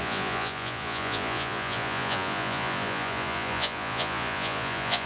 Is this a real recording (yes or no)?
no